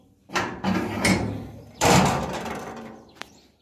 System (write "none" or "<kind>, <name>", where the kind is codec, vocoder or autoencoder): vocoder, BigVGAN v2